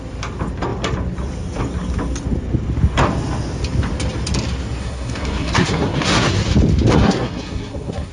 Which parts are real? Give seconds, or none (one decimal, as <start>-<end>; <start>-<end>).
0.0-4.8; 6.5-6.9